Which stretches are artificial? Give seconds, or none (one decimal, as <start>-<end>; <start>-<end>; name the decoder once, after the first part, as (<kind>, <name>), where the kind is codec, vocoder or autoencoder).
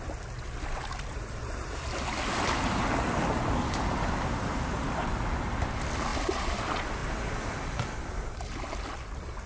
none